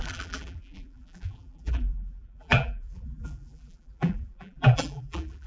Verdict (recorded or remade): remade